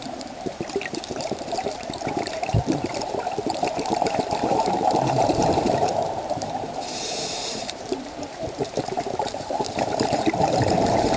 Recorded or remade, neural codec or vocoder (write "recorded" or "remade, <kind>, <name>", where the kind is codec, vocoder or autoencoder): remade, vocoder, BigVGAN v2